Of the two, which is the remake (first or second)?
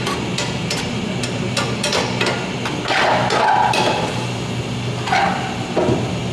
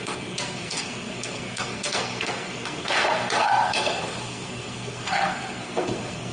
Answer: second